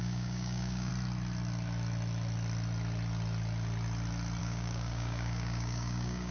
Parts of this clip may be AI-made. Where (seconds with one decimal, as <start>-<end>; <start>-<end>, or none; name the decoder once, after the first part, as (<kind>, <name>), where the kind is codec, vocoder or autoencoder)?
0.0-0.9 (codec, DAC); 4.4-6.3